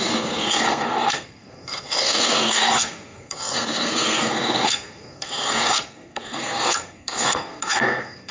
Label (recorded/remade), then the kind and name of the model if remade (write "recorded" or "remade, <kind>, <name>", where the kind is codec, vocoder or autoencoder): remade, codec, SNAC